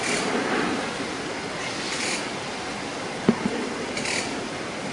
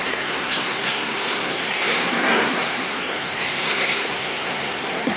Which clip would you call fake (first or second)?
second